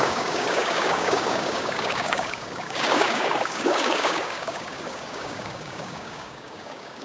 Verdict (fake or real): fake